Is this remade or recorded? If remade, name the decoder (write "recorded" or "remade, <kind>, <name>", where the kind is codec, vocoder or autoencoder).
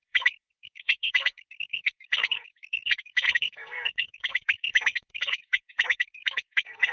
remade, codec, SNAC